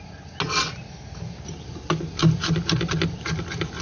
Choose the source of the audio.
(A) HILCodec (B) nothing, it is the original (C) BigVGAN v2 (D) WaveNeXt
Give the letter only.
B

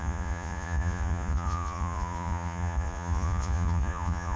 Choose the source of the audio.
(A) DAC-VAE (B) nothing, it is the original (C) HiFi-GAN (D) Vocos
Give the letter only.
D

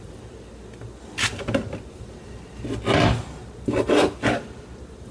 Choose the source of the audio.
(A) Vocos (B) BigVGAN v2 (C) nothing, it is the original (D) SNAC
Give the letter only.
C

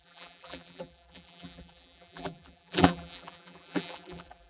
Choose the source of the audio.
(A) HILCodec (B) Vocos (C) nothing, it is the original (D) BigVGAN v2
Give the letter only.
D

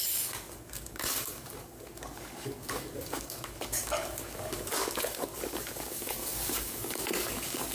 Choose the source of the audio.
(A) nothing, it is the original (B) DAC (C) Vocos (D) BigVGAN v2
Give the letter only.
B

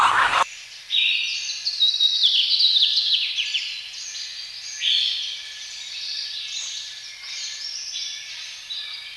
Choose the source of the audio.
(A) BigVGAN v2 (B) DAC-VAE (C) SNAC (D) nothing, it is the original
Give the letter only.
D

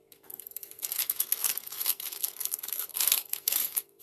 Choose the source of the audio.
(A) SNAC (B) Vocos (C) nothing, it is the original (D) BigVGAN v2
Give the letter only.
A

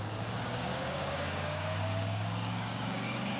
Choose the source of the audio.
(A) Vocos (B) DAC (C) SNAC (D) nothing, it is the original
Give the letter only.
B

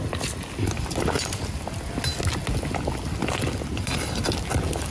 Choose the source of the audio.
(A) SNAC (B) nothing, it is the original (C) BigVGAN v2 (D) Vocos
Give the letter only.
B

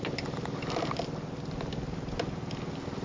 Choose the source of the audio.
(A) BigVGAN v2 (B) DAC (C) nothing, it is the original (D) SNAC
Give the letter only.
C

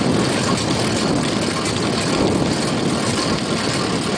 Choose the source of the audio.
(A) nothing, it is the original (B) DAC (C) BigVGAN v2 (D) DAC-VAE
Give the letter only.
A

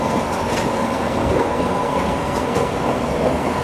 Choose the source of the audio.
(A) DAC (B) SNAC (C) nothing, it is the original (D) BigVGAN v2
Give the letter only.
B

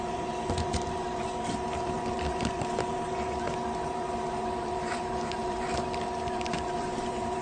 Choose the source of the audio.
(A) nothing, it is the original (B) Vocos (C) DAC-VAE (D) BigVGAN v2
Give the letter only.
D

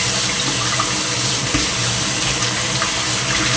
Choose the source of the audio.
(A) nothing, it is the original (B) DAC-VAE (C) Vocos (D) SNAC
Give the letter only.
A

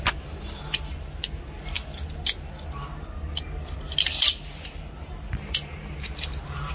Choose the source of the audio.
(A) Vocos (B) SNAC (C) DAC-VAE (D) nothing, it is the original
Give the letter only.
D